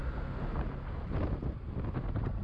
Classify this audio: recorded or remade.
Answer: recorded